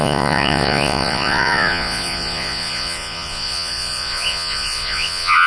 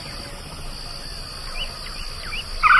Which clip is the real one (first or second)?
second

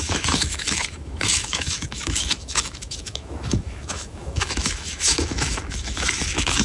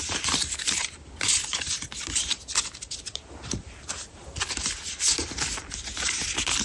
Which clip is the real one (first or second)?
second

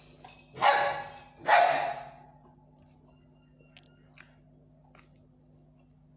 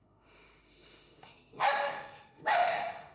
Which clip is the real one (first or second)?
first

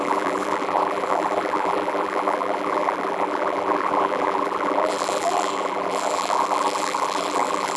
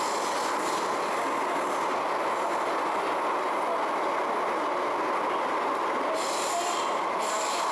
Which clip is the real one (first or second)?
second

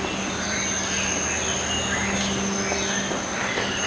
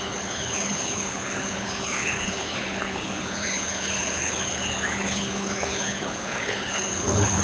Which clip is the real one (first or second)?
first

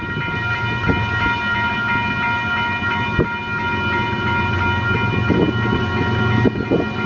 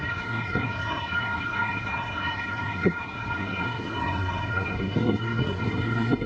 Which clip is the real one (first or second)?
first